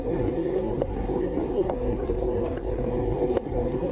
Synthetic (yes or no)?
yes